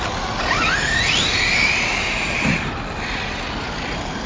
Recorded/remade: recorded